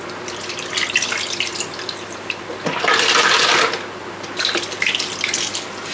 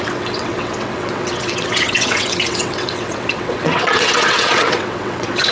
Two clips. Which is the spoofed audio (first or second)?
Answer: second